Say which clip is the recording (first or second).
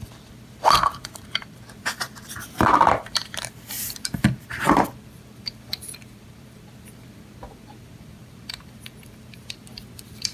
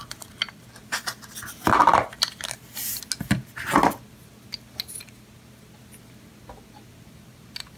second